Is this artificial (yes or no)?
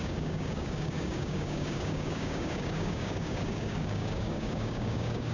yes